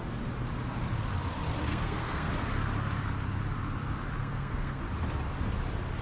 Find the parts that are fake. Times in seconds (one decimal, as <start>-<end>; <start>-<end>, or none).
1.7-2.3; 4.2-4.8